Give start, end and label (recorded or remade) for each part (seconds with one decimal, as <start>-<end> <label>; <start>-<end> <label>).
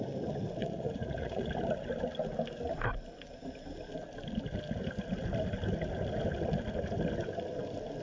0.0-0.6 recorded; 0.6-1.5 remade; 1.5-8.0 recorded